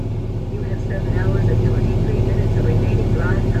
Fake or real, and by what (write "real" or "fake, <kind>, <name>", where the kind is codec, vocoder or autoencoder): real